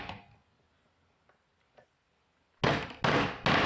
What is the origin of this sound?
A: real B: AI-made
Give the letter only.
A